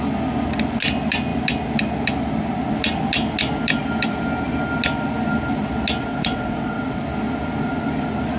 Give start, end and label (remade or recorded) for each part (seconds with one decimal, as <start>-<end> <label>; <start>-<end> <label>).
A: 0.0-6.1 recorded; 6.1-7.0 remade; 7.0-8.4 recorded